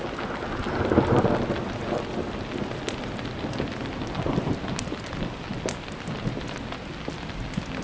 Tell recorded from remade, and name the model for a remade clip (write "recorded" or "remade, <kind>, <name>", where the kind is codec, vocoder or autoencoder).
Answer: recorded